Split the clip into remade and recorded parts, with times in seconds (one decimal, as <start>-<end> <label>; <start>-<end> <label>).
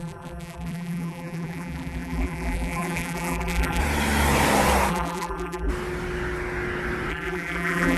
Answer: 0.0-3.8 remade; 3.8-4.9 recorded; 4.9-5.7 remade; 5.7-7.1 recorded; 7.1-8.0 remade